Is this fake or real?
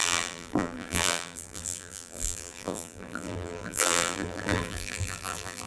fake